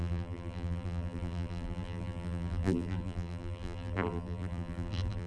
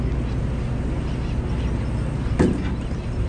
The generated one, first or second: first